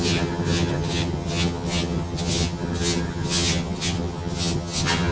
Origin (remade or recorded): remade